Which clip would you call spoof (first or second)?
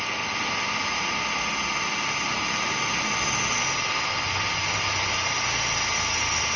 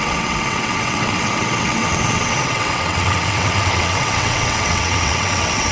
second